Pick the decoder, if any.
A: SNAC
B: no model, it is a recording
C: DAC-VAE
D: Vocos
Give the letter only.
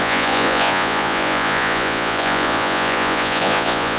D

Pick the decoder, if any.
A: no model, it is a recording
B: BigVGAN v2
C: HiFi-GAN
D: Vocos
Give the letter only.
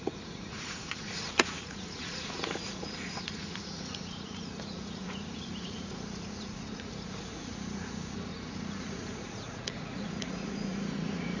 D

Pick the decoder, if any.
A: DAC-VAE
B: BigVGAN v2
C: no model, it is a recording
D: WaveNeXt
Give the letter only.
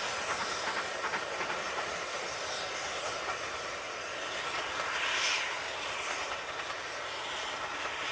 C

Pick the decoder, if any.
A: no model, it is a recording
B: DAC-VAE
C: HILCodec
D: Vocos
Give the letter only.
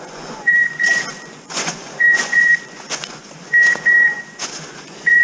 D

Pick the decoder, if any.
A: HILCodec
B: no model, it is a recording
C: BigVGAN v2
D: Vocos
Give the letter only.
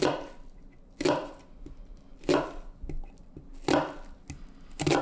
B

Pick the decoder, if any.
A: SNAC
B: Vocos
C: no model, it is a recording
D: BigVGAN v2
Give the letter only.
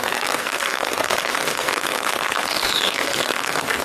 A